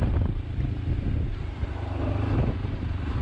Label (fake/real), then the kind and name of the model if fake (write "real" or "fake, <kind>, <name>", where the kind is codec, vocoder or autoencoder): real